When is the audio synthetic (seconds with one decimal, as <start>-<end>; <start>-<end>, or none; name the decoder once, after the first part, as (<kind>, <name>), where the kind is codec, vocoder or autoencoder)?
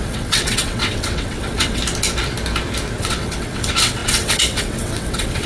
0.0-1.8 (vocoder, WaveNeXt); 3.0-5.5